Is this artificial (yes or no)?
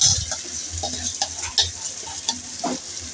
no